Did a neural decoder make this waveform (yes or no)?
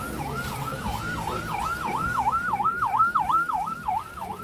no